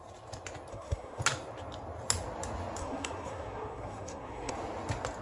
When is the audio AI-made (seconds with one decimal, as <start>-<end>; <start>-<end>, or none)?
0.7-1.2; 2.8-4.5